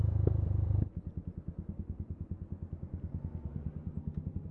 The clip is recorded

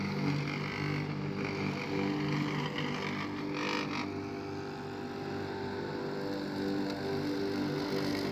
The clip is recorded